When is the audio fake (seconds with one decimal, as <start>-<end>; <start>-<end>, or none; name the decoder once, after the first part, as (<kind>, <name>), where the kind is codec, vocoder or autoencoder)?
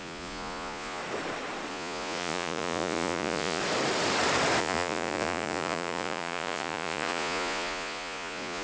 0.0-1.0 (vocoder, Vocos); 1.7-3.6; 4.6-8.6